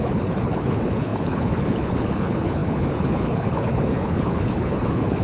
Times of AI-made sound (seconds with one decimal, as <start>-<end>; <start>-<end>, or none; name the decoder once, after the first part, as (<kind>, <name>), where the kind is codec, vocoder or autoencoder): 0.0-5.2 (codec, HILCodec)